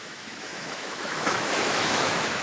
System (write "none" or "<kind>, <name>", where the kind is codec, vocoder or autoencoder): autoencoder, DAC-VAE